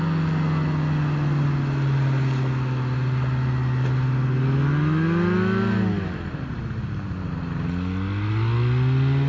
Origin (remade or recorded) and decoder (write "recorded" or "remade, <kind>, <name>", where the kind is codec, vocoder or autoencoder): recorded